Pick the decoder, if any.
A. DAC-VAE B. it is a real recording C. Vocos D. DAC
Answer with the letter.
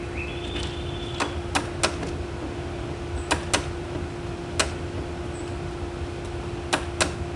B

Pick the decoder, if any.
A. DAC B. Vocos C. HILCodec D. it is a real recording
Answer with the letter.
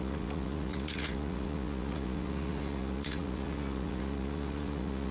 B